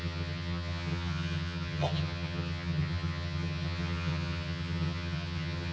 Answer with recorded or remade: remade